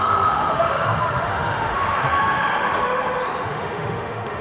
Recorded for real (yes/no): no